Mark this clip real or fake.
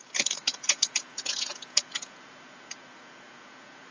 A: fake